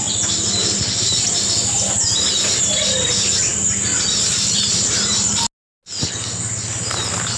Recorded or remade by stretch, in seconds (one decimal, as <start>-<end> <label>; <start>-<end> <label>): 0.0-0.6 recorded; 0.6-3.0 remade; 3.0-7.4 recorded